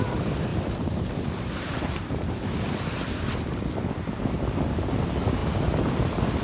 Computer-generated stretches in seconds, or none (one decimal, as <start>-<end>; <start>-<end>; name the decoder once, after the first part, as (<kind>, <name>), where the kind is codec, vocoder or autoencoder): 0.5-3.6 (vocoder, BigVGAN v2)